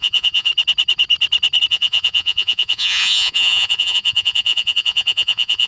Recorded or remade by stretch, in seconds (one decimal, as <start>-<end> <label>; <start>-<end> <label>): 0.0-0.5 remade; 0.5-1.7 recorded; 1.7-5.7 remade